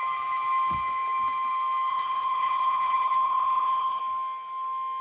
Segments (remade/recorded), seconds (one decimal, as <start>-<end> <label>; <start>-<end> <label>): 0.0-1.9 recorded; 1.9-4.0 remade; 4.0-5.0 recorded